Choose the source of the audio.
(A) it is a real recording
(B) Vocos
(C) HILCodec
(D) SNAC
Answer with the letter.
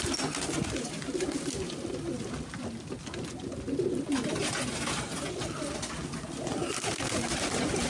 A